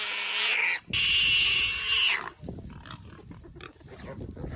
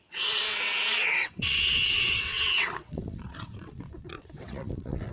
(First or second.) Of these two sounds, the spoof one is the second